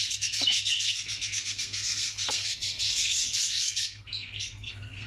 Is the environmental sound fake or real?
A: fake